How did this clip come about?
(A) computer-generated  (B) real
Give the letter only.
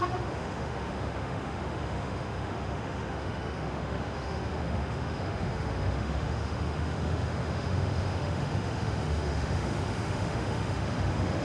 A